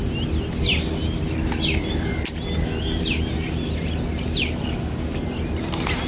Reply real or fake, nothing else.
real